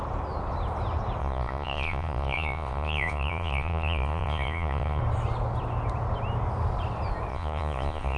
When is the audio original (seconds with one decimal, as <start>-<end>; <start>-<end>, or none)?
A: 0.0-1.2; 5.0-7.3